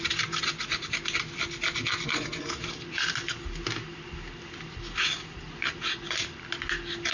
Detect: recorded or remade recorded